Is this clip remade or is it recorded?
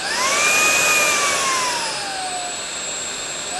recorded